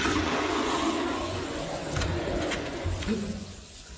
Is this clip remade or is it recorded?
remade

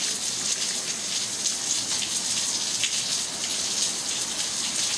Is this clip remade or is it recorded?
recorded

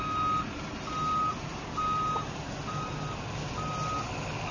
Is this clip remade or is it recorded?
recorded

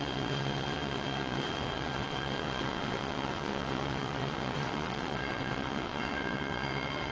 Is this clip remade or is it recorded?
remade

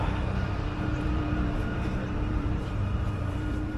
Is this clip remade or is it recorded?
remade